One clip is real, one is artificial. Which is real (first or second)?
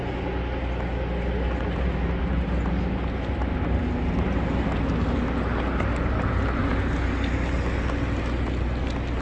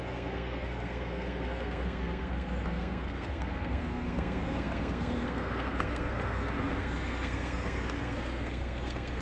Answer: first